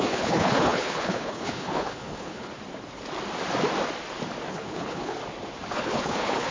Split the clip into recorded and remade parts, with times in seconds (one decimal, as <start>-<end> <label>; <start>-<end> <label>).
0.0-2.5 remade; 2.5-4.5 recorded; 4.5-5.2 remade; 5.2-5.7 recorded; 5.7-6.5 remade